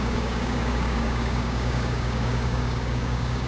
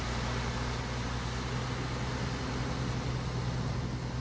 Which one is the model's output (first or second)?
first